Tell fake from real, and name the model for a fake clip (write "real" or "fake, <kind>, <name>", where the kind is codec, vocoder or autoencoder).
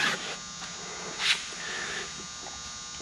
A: real